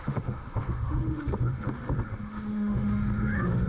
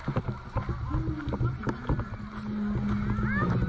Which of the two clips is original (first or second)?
second